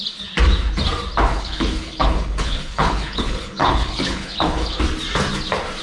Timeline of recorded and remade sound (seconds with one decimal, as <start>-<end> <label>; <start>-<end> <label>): 0.0-1.3 recorded; 1.3-4.8 remade; 4.8-5.8 recorded